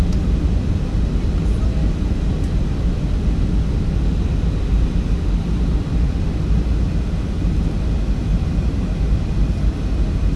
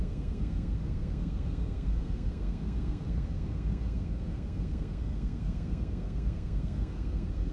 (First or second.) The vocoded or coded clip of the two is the second